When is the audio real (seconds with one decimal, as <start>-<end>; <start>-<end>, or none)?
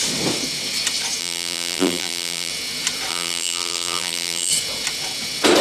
0.0-1.2; 2.5-3.1; 4.5-5.6